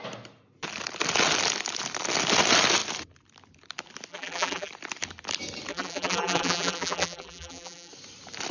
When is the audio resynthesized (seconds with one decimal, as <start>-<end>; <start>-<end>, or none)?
4.1-4.7; 5.7-7.9